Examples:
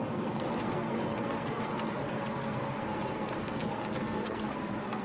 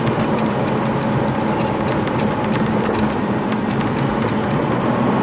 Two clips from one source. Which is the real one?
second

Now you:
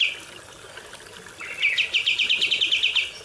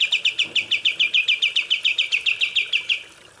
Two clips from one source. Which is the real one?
first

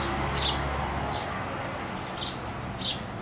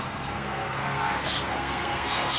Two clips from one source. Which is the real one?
first